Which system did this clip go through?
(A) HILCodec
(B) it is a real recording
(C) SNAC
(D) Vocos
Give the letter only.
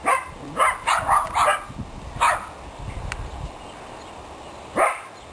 B